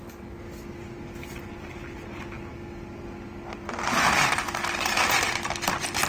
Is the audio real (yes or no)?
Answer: yes